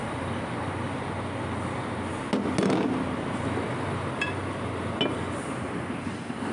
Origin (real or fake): real